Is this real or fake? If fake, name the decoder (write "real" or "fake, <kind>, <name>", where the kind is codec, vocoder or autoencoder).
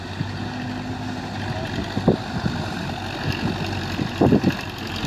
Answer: real